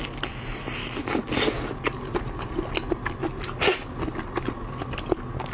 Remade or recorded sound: recorded